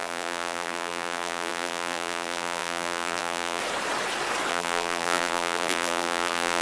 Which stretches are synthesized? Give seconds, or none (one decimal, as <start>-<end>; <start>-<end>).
0.0-3.6; 4.5-6.6